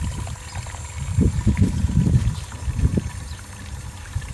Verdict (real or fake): real